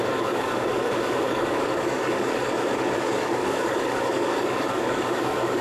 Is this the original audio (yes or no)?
no